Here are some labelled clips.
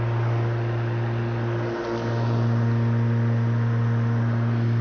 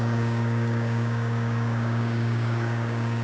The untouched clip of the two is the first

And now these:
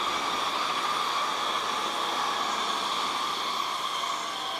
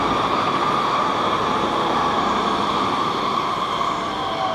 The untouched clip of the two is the first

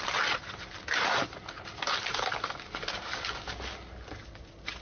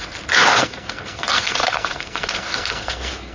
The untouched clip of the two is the first